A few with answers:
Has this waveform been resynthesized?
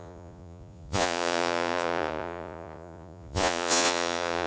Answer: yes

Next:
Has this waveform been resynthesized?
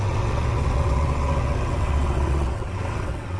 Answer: yes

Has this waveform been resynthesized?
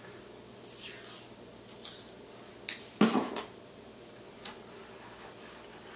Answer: no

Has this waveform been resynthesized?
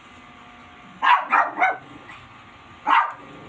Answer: no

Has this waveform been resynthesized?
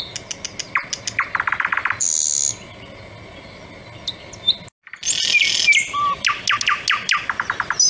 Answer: no